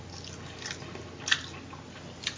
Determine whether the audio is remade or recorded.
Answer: recorded